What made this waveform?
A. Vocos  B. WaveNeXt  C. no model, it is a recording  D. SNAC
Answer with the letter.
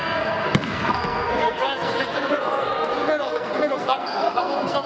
D